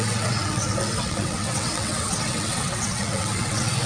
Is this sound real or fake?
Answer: fake